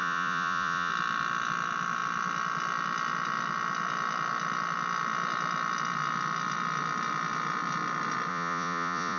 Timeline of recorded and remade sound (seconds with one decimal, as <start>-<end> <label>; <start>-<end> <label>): 0.0-0.9 remade; 0.9-8.3 recorded; 8.3-9.2 remade